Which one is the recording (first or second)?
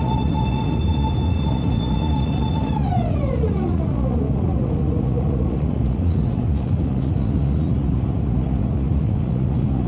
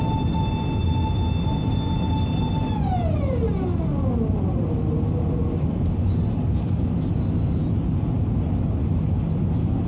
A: second